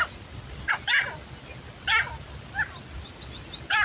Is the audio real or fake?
real